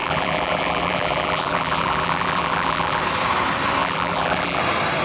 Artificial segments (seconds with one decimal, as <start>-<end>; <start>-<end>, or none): 0.0-3.0; 3.8-4.6